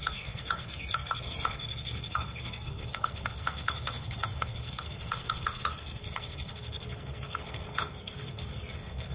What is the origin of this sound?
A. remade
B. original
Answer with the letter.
A